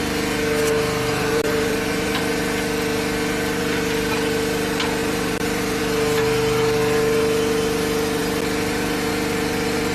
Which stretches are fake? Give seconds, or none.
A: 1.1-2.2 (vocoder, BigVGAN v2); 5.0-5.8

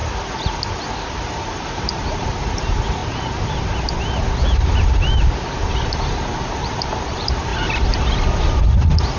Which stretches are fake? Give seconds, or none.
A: 1.3-3.0 (vocoder, BigVGAN v2); 5.6-7.5

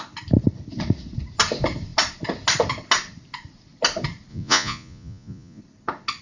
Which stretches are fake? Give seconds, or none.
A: 4.3-5.6 (vocoder, Vocos)

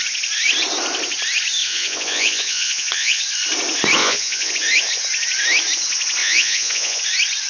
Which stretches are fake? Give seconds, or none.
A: 1.6-3.2 (vocoder, Vocos); 4.0-4.5; 6.2-7.0